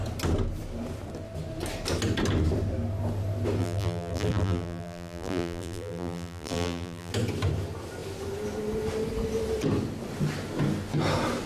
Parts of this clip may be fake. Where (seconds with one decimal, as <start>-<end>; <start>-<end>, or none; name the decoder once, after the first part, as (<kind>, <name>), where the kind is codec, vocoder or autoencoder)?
3.6-7.1 (vocoder, BigVGAN v2)